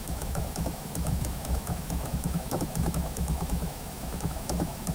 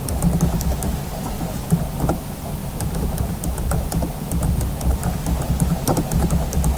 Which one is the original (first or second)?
second